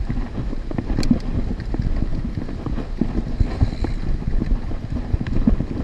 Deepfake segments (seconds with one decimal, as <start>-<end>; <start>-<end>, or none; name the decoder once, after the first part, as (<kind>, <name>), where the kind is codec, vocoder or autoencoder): none